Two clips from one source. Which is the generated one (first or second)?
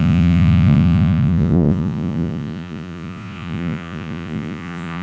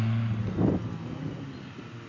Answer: first